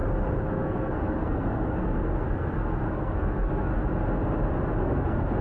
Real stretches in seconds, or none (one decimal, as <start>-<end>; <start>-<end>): 0.0-0.5; 3.7-4.8